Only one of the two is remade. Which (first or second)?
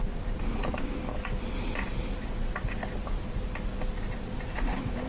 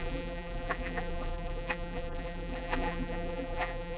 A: second